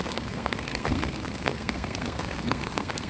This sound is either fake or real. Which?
fake